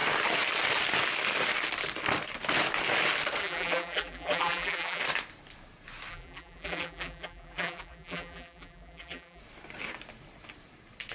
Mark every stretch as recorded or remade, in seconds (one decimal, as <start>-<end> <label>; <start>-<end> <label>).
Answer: 0.0-3.4 recorded; 3.4-5.0 remade; 5.0-6.1 recorded; 6.1-9.4 remade; 9.4-11.1 recorded